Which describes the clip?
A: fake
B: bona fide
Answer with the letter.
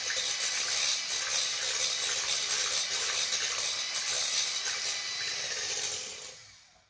B